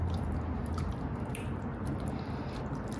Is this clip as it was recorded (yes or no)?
no